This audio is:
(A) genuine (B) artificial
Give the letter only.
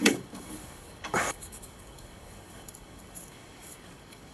B